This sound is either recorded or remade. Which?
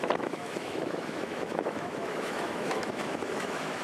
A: remade